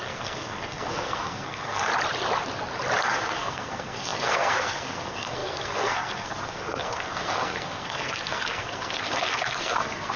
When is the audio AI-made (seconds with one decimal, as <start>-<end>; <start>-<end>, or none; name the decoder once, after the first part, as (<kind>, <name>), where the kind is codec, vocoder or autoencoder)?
0.0-1.9 (codec, SNAC); 3.0-10.2